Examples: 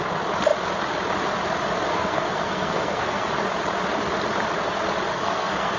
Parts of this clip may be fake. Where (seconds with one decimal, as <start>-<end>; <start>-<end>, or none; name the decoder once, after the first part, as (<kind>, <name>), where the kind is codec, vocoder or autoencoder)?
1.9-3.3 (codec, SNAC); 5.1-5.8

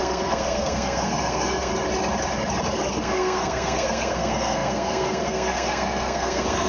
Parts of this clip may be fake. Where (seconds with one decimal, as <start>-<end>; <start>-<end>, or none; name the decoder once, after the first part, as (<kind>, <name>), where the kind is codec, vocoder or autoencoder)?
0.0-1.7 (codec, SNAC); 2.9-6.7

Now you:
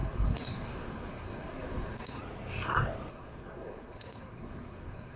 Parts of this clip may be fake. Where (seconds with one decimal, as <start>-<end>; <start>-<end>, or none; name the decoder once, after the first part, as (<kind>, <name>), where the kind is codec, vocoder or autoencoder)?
0.0-2.2 (codec, SNAC); 3.1-5.2